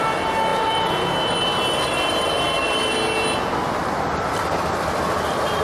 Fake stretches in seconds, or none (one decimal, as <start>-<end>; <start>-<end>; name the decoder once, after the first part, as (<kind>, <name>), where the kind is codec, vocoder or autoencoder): 0.5-2.8 (vocoder, BigVGAN v2)

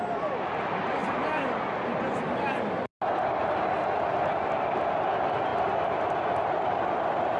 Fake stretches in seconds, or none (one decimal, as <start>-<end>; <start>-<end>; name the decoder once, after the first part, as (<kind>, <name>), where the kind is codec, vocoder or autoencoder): none

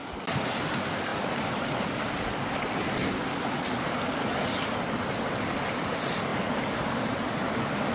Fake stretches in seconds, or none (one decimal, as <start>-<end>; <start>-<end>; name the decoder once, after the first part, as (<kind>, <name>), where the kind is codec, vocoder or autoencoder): none

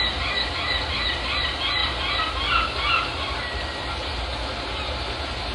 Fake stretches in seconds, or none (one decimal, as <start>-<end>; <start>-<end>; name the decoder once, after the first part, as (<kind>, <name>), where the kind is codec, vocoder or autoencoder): none

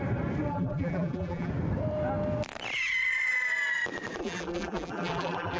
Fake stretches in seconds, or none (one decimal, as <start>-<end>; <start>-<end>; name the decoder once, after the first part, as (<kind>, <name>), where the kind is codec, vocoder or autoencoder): 0.5-1.5 (vocoder, BigVGAN v2); 4.2-5.6

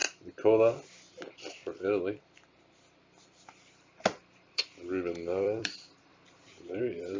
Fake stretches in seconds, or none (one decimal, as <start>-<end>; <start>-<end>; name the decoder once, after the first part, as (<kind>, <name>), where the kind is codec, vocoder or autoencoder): 4.3-6.1 (vocoder, BigVGAN v2); 6.8-7.2

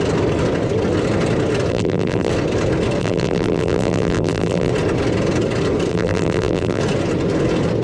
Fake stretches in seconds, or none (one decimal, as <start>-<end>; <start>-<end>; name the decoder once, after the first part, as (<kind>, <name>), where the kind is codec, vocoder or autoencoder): 1.7-2.3 (vocoder, BigVGAN v2); 3.0-4.7; 5.9-6.8